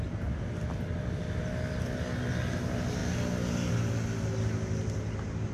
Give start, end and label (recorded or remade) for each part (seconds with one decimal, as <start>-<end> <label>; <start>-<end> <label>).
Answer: 0.0-5.5 recorded